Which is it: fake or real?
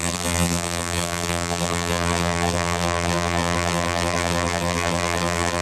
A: fake